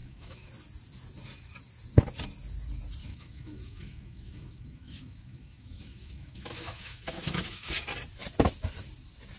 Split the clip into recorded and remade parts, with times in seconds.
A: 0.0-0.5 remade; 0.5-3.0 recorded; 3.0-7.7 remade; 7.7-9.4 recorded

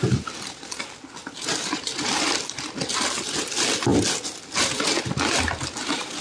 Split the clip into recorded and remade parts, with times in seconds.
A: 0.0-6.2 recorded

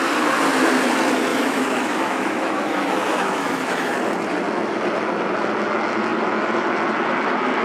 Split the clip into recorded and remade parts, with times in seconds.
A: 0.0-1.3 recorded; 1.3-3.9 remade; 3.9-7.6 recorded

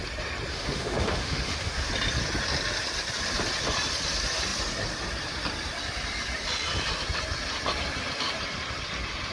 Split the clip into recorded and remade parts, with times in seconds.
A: 0.0-0.5 recorded; 0.5-1.9 remade; 1.9-9.3 recorded